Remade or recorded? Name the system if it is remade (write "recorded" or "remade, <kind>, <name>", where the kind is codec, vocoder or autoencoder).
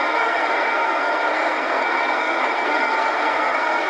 remade, codec, SNAC